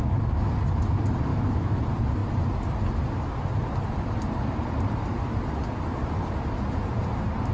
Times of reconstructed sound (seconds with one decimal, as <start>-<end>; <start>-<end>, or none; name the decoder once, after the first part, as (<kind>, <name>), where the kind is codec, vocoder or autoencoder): 0.0-0.5 (autoencoder, DAC-VAE); 1.3-1.8